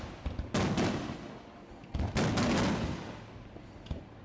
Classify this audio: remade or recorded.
recorded